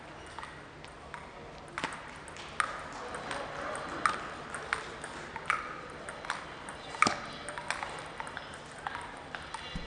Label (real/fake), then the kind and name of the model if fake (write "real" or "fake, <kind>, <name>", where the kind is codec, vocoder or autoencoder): real